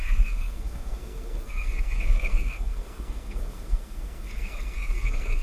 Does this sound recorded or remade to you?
remade